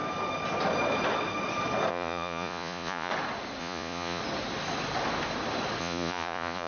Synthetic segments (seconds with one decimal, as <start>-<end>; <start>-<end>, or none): 1.9-3.1; 3.6-4.2; 5.8-6.7